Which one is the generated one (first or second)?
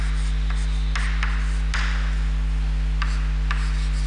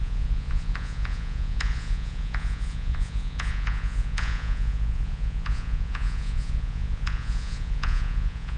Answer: second